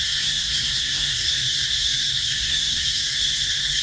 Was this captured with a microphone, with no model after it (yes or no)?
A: no